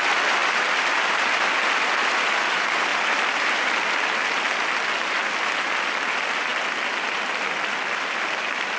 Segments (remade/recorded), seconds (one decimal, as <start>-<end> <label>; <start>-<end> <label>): 0.0-2.9 remade; 2.9-5.8 recorded; 5.8-6.5 remade; 6.5-7.2 recorded; 7.2-8.8 remade